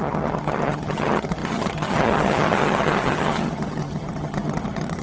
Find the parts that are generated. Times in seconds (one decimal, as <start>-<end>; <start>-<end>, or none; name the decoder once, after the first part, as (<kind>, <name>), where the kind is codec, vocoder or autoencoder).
0.0-5.0 (vocoder, HiFi-GAN)